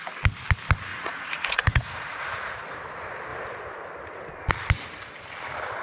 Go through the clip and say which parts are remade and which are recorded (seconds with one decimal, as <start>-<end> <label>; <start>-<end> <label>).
0.0-0.9 recorded; 0.9-2.6 remade; 2.6-5.8 recorded